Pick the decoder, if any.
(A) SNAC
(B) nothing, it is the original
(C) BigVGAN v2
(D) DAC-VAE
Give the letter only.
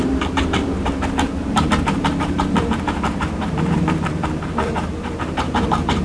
C